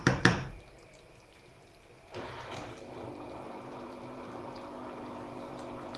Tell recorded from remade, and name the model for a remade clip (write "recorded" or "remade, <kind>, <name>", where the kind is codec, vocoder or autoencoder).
remade, vocoder, BigVGAN v2